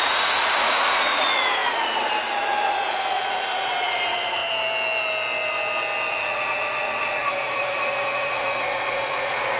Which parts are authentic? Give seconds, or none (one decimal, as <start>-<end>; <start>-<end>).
4.4-6.1

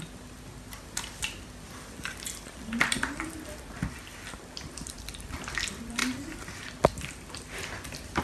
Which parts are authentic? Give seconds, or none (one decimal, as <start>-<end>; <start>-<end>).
0.0-8.2